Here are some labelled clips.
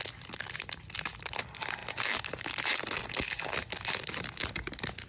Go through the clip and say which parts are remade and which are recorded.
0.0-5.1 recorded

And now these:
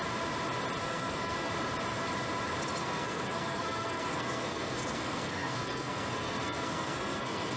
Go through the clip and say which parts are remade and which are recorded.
0.0-0.8 recorded; 0.8-1.5 remade; 1.5-2.8 recorded; 2.8-7.6 remade

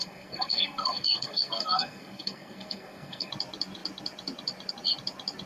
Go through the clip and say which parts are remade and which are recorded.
0.0-3.3 remade; 3.3-5.5 recorded

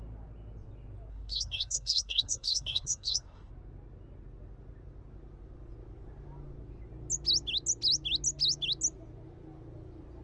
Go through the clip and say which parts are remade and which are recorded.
0.0-1.1 recorded; 1.1-3.5 remade; 3.5-10.2 recorded